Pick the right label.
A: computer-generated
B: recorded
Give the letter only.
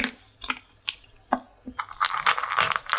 B